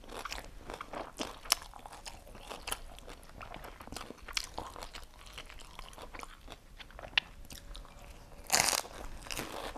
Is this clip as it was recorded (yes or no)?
yes